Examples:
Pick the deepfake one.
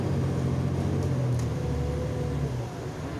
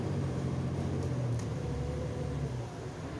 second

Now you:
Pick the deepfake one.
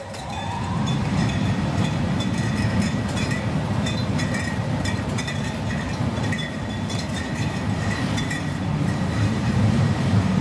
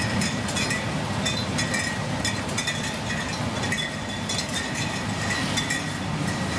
first